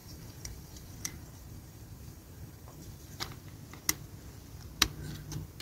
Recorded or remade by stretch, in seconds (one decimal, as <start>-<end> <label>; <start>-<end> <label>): 0.0-3.4 remade; 3.4-5.6 recorded